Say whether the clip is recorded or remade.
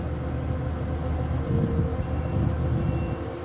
recorded